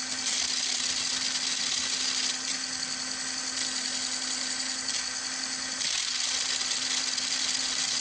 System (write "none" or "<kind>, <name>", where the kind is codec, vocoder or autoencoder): none